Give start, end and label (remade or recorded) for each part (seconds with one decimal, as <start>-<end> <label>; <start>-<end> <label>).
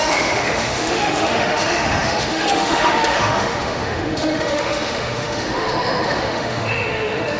0.0-7.4 remade